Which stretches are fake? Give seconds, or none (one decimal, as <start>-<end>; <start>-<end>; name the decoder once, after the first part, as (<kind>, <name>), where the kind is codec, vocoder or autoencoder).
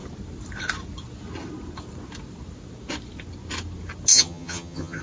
4.1-5.0 (vocoder, HiFi-GAN)